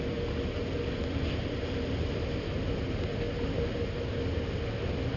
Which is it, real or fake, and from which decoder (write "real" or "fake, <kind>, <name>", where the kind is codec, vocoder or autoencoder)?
real